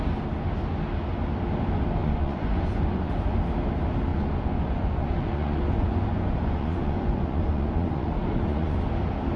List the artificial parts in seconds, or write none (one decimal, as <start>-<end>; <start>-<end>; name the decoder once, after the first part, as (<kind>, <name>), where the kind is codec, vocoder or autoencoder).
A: 2.0-3.1 (vocoder, Vocos); 4.1-8.8